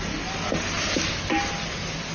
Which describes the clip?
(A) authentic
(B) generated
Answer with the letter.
A